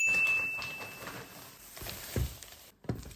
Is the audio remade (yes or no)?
yes